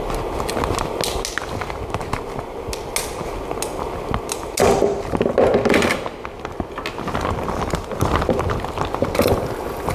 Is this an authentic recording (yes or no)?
yes